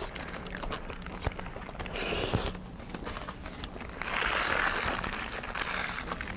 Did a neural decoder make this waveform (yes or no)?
no